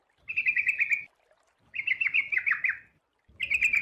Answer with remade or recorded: recorded